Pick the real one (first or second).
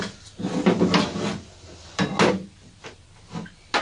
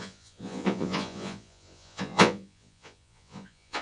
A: first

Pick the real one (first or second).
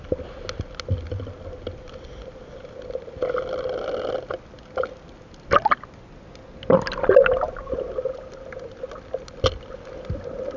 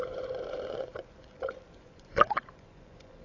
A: first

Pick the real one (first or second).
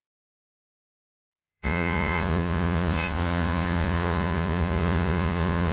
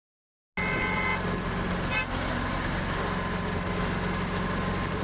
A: second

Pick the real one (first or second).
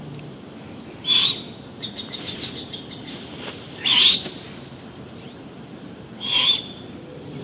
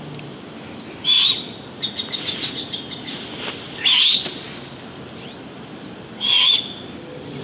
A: second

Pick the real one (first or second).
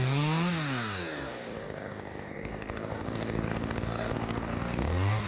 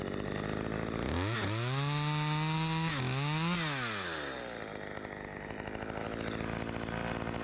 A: second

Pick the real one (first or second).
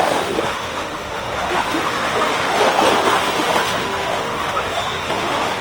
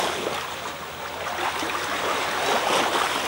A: second